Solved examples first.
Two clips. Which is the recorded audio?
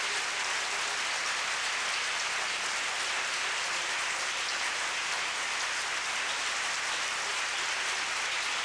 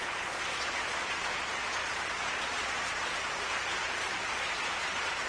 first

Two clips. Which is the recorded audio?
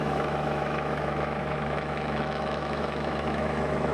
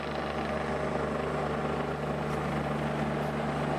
second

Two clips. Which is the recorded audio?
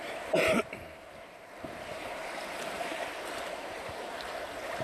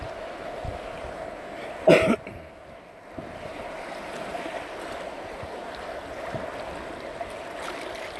second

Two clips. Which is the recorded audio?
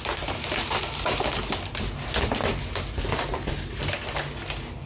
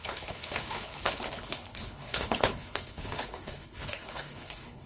first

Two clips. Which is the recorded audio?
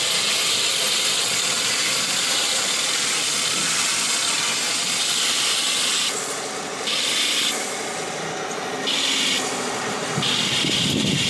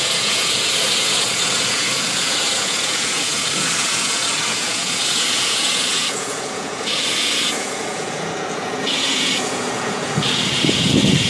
first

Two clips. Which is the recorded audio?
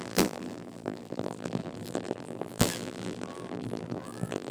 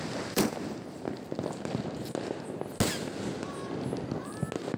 second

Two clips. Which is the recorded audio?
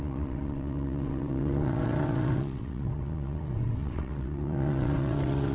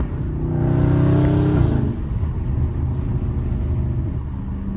second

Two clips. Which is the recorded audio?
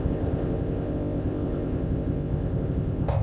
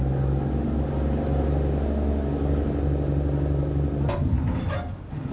second